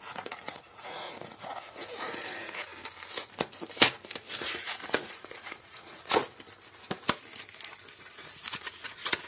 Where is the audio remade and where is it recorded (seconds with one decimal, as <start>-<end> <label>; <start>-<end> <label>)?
0.0-2.7 remade; 2.7-4.4 recorded; 4.4-6.2 remade; 6.2-8.0 recorded; 8.0-9.3 remade